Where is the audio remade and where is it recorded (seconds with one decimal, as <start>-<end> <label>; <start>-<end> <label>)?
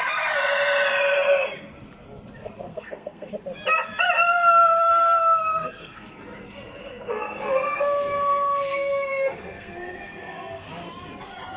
0.0-2.7 recorded; 2.7-3.3 remade; 3.3-4.8 recorded; 4.8-6.2 remade; 6.2-6.8 recorded; 6.8-10.7 remade; 10.7-11.6 recorded